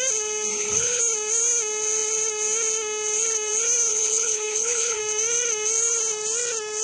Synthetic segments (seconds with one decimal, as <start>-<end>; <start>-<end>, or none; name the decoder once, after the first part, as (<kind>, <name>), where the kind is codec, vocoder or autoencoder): 0.5-1.0 (codec, HILCodec); 3.9-5.0